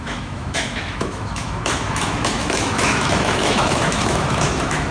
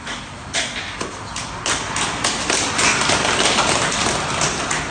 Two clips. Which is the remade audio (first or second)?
first